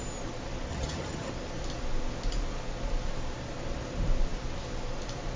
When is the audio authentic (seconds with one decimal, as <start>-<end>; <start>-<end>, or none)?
0.0-0.7; 1.3-5.4